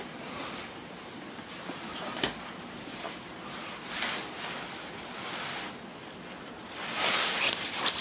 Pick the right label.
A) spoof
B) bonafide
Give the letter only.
B